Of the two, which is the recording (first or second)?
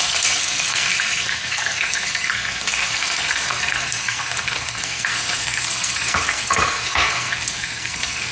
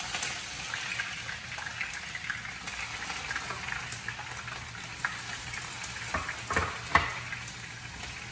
second